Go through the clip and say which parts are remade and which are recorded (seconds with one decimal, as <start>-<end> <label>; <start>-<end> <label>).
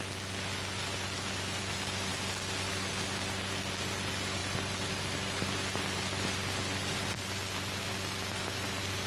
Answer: 0.0-9.1 recorded